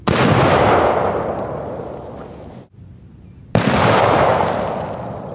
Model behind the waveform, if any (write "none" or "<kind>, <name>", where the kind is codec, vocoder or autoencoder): none